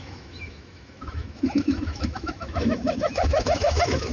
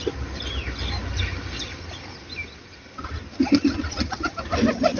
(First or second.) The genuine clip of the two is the second